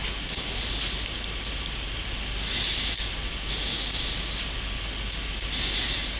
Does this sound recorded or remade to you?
recorded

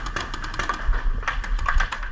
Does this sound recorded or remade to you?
recorded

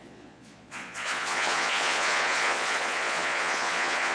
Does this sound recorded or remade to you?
remade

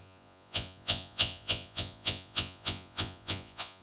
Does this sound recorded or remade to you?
remade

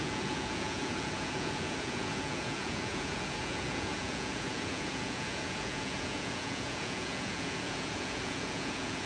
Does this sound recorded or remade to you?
remade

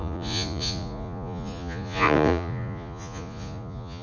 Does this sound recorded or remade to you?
remade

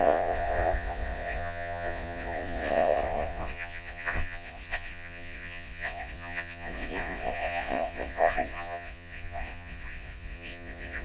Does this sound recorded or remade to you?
remade